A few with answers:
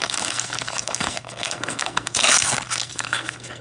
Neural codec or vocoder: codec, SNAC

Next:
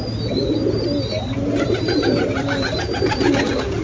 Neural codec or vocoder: none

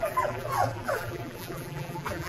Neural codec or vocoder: vocoder, BigVGAN v2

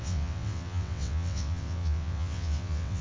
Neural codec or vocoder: vocoder, WaveNeXt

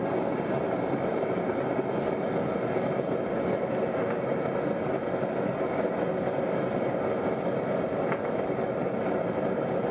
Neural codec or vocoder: none